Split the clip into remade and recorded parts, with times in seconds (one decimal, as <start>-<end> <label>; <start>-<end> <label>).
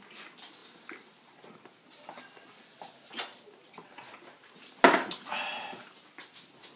0.0-0.6 recorded; 0.6-4.7 remade; 4.7-6.8 recorded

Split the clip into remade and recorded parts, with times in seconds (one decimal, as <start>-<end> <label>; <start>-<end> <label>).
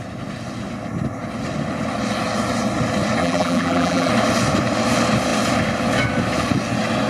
0.0-3.2 recorded; 3.2-4.1 remade; 4.1-7.1 recorded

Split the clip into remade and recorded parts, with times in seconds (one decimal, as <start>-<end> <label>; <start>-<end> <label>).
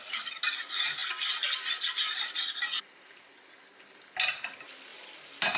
0.0-4.9 recorded; 4.9-5.6 remade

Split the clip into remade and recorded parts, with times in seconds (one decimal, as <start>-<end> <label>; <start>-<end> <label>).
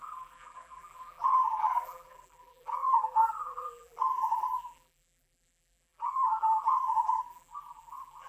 0.0-8.3 remade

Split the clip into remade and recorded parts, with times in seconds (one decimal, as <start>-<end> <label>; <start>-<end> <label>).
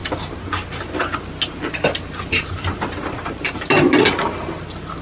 0.0-5.0 recorded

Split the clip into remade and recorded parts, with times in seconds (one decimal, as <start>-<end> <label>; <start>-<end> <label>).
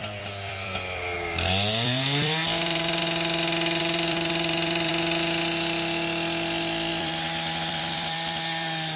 0.0-3.0 remade; 3.0-3.8 recorded; 3.8-4.9 remade; 4.9-6.9 recorded; 6.9-9.0 remade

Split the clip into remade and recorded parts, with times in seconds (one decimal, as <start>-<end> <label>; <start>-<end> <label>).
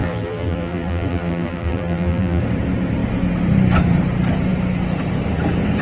0.0-2.4 remade; 2.4-5.8 recorded